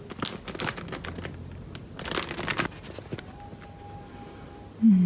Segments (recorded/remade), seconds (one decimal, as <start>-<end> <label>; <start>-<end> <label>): 0.0-5.1 recorded